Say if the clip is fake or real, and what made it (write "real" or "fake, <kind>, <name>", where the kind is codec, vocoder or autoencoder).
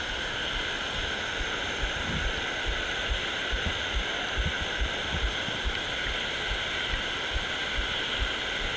real